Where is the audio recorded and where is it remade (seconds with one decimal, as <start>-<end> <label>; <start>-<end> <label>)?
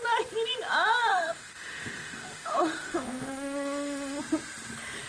0.0-1.1 recorded; 1.1-4.2 remade; 4.2-5.1 recorded